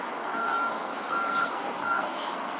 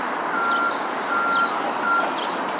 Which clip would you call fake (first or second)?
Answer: first